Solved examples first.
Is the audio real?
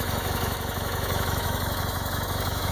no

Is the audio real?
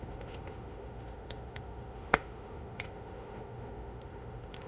no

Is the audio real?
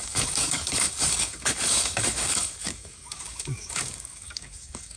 no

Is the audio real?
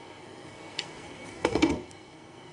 no